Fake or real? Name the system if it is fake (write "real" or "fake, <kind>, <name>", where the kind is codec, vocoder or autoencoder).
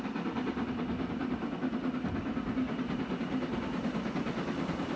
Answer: real